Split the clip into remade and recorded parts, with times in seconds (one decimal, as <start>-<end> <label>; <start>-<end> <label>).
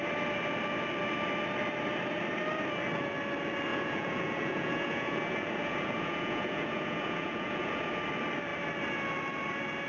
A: 0.0-3.7 recorded; 3.7-8.0 remade; 8.0-9.9 recorded